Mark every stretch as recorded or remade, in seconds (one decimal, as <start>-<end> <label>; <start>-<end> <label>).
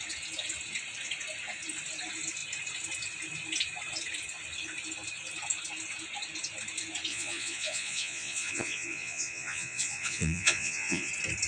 0.0-7.1 recorded; 7.1-11.1 remade; 11.1-11.5 recorded